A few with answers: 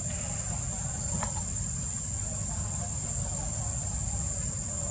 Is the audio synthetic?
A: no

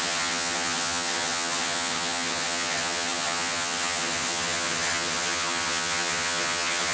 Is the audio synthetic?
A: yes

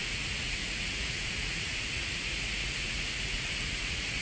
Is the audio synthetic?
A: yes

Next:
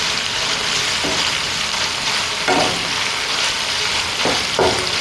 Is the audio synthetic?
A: no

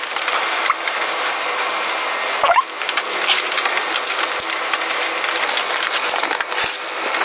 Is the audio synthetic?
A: no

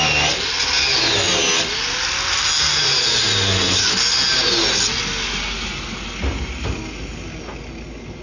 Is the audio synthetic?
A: no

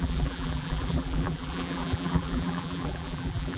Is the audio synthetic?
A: yes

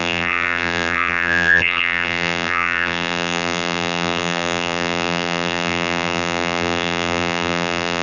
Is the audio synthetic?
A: yes